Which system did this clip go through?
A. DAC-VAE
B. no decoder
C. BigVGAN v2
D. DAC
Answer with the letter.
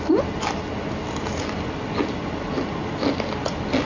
B